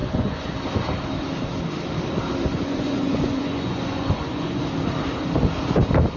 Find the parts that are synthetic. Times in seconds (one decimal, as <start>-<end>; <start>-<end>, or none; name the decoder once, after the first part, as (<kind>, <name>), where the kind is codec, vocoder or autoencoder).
0.0-0.5 (vocoder, Vocos); 2.5-4.6